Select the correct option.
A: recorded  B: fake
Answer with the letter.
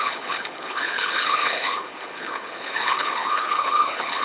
B